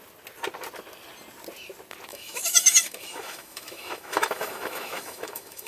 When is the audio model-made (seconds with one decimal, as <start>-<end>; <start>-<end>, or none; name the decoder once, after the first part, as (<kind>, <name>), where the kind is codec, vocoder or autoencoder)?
2.1-5.7 (autoencoder, DAC-VAE)